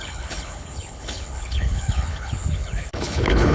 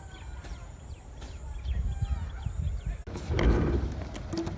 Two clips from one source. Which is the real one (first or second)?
second